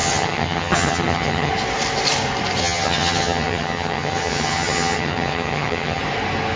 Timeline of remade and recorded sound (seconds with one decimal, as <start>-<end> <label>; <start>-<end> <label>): 0.0-1.5 remade; 1.5-2.6 recorded; 2.6-6.0 remade; 6.0-6.6 recorded